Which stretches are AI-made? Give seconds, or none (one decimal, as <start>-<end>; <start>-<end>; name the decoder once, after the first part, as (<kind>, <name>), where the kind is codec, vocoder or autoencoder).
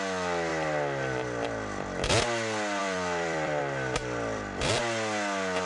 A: 2.8-3.6 (vocoder, BigVGAN v2); 4.0-4.8